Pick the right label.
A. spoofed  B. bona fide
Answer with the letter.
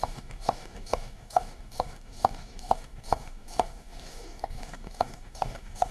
A